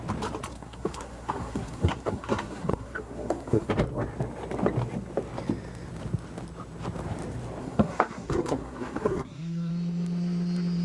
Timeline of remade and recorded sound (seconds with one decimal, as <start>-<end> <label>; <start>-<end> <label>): 0.0-0.5 recorded; 0.5-3.7 remade; 3.7-7.6 recorded; 7.6-9.7 remade; 9.7-10.8 recorded